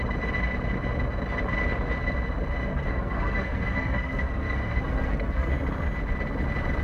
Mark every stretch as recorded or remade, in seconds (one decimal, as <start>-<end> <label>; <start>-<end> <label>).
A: 0.0-2.7 recorded; 2.7-5.5 remade; 5.5-6.8 recorded

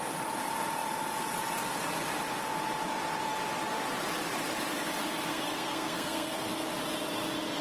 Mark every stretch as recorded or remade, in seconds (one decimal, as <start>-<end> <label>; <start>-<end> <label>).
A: 0.0-5.3 recorded; 5.3-6.5 remade; 6.5-7.6 recorded

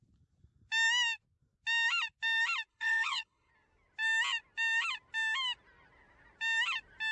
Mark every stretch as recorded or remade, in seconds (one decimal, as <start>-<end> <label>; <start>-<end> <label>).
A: 0.0-2.7 recorded; 2.7-3.5 remade; 3.5-7.1 recorded

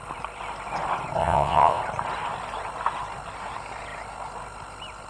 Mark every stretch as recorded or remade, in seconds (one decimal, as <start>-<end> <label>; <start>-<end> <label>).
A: 0.0-1.2 recorded; 1.2-1.8 remade; 1.8-5.1 recorded